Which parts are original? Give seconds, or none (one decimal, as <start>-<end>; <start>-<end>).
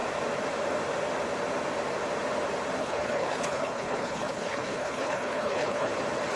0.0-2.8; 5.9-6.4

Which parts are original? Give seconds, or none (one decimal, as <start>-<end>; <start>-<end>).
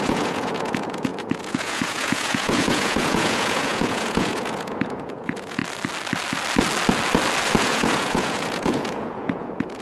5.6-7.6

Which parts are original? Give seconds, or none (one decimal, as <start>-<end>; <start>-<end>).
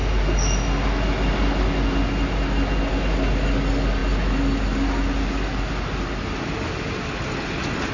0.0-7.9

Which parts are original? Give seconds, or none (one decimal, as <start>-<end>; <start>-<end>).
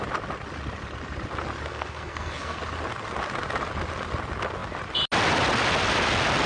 0.0-1.7; 2.6-6.5